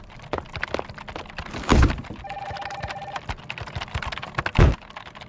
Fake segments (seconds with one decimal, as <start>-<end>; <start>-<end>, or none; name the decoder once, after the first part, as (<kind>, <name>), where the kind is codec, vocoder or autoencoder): none